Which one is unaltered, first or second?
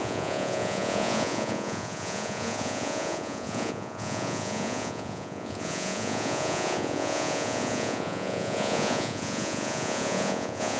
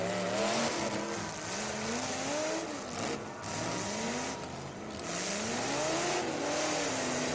second